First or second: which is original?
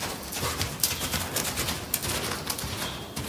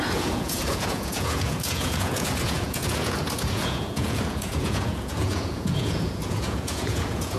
first